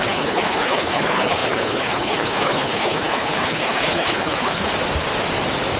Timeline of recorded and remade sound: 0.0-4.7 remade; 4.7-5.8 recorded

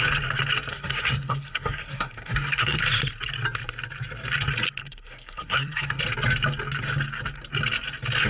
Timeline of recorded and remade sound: 0.0-0.7 recorded; 0.7-2.8 remade; 2.8-4.8 recorded; 4.8-6.0 remade; 6.0-8.3 recorded

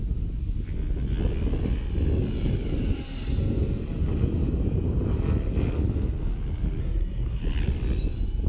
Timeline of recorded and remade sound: 0.0-6.8 recorded; 6.8-7.4 remade; 7.4-8.5 recorded

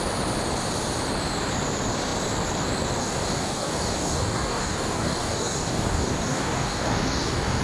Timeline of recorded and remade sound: 0.0-3.0 recorded; 3.0-7.6 remade